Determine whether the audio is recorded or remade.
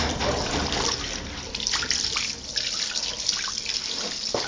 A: recorded